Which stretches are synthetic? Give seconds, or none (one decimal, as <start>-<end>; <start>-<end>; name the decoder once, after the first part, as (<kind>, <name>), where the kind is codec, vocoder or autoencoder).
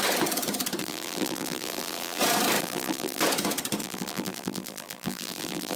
0.8-2.2 (vocoder, BigVGAN v2); 2.6-3.2; 3.8-5.8